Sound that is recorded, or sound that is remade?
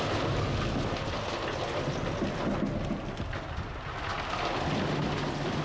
recorded